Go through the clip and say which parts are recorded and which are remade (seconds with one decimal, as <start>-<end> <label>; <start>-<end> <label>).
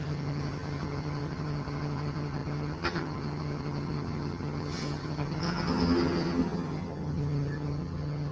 0.0-8.3 remade